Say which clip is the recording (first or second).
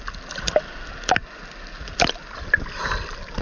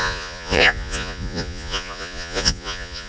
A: first